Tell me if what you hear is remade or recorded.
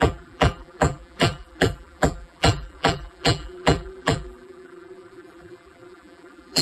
remade